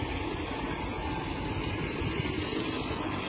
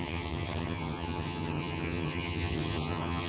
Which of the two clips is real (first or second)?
first